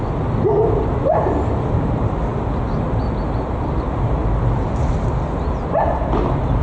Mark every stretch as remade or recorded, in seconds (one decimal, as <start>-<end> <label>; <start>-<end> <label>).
0.0-4.2 remade; 4.2-4.9 recorded; 4.9-6.6 remade